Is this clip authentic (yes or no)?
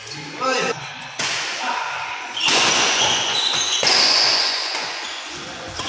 no